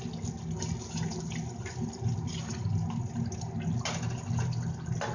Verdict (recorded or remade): recorded